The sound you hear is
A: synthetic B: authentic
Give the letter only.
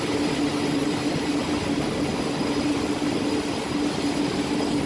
B